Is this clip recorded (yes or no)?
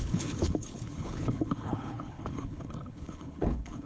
no